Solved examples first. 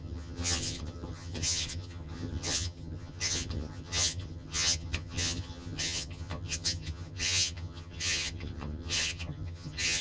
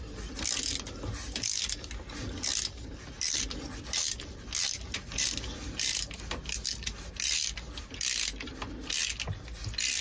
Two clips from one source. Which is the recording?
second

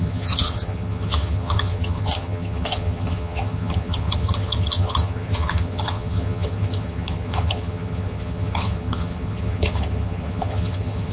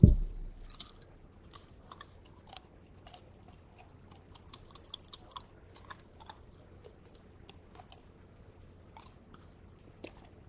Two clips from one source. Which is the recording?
second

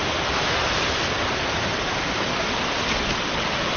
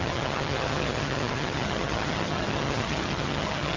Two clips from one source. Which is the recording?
first